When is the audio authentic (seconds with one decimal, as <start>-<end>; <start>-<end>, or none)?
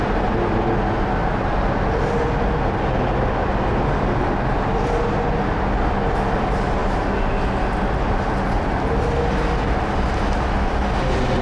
0.0-11.4